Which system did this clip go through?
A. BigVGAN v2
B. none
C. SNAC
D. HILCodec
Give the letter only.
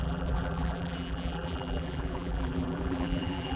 A